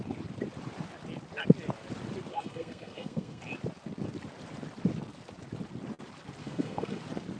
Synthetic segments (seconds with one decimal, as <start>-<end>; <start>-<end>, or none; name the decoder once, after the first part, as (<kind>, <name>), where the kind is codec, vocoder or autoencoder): 2.3-3.4 (codec, SNAC); 6.4-7.0